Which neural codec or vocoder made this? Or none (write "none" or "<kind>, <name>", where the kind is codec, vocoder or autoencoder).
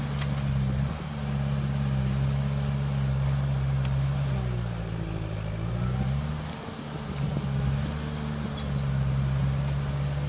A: none